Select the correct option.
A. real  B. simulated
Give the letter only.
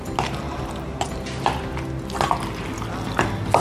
A